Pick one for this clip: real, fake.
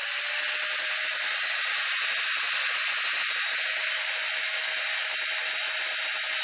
real